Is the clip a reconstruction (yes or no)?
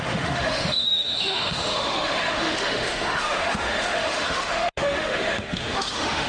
yes